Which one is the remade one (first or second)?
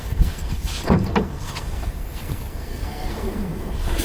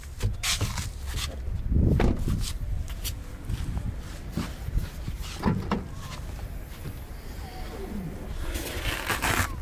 first